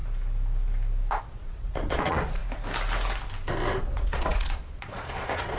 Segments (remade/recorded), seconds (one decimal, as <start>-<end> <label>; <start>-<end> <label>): 0.0-1.2 recorded; 1.2-2.4 remade; 2.4-3.8 recorded; 3.8-5.6 remade